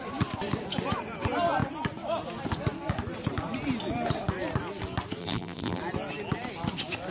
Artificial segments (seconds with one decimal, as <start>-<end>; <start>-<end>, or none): 5.2-5.8